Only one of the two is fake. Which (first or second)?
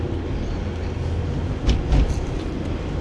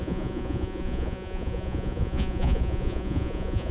second